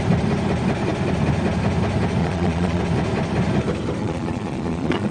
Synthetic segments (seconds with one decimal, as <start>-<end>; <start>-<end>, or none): 2.2-2.8; 4.0-5.1